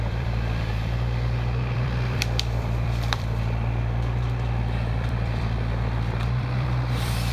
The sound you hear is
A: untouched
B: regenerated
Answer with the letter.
B